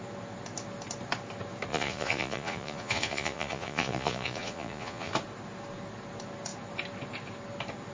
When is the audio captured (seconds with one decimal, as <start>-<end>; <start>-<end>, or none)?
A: 0.0-1.7; 5.1-7.9